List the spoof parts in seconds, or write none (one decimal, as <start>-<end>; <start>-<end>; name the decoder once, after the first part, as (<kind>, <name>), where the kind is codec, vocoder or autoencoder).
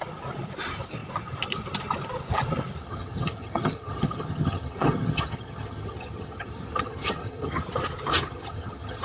2.8-7.6 (vocoder, HiFi-GAN); 8.1-9.0